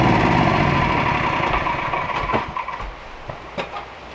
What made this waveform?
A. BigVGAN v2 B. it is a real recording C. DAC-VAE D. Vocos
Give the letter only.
B